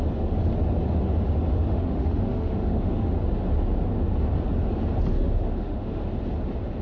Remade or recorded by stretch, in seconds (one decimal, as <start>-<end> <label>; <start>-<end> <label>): 0.0-1.7 recorded; 1.7-3.1 remade; 3.1-5.1 recorded; 5.1-6.0 remade; 6.0-6.8 recorded